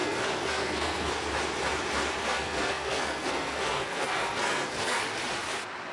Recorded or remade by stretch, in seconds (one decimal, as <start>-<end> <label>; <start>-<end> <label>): 0.0-1.1 remade; 1.1-2.2 recorded; 2.2-5.0 remade; 5.0-5.9 recorded